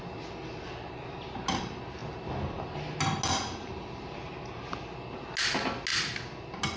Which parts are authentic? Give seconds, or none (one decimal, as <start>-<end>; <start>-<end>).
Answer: 0.0-6.8